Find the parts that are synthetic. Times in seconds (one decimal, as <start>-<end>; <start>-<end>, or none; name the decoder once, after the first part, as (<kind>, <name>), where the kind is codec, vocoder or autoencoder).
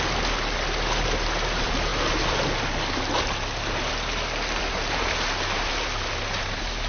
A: none